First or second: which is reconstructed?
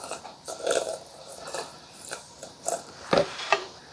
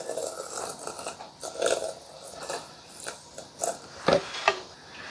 first